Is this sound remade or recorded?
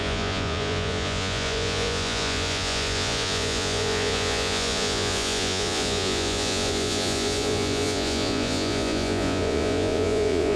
remade